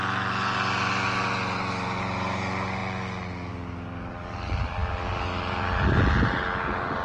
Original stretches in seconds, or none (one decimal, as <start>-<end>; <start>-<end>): 0.0-7.0